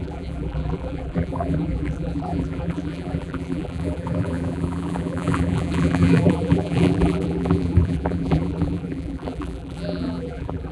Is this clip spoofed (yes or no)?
yes